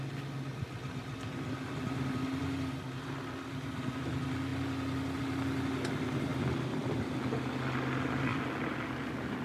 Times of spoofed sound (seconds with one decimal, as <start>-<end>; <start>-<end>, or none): none